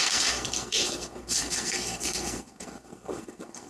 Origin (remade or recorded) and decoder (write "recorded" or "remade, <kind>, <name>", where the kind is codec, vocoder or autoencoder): remade, codec, SNAC